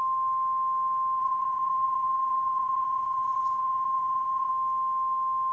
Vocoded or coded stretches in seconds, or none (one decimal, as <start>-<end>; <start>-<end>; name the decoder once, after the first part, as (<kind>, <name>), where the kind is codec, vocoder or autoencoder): 1.2-4.5 (vocoder, Vocos)